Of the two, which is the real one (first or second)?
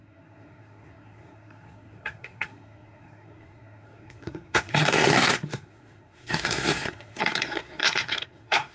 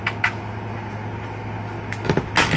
second